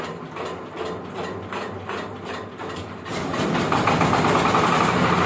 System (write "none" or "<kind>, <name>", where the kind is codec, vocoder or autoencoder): none